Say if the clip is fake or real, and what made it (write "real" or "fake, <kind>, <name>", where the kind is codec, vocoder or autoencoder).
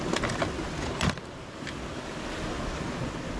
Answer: real